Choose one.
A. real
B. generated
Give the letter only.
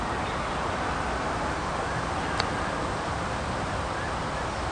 A